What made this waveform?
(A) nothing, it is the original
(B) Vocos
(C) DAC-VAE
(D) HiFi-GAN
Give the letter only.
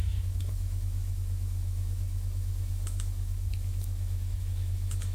C